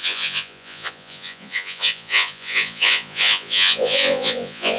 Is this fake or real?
fake